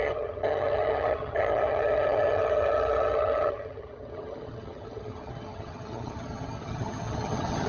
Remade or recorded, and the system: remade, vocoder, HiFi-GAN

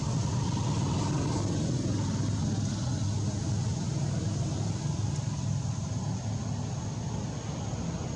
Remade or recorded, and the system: recorded